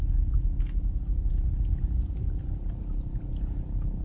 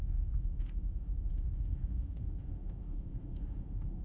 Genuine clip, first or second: first